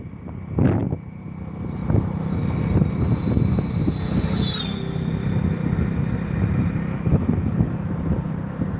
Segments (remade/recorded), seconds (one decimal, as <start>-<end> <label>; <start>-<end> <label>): 0.0-8.8 recorded